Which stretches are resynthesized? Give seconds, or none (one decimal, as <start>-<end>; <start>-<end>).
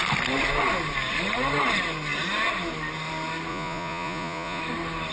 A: 3.5-4.6